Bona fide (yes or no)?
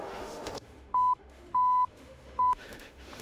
no